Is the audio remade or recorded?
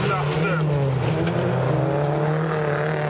recorded